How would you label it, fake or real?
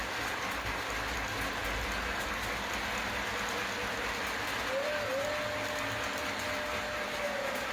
real